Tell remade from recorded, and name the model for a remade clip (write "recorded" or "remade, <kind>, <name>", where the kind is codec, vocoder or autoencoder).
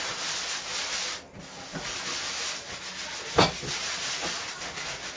recorded